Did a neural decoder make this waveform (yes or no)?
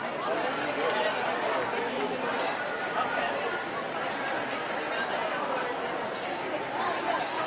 no